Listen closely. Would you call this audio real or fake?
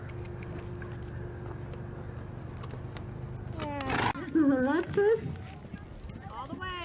real